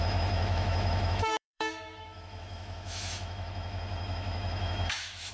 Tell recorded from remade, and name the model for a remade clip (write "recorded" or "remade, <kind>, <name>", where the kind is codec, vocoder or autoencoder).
remade, autoencoder, DAC-VAE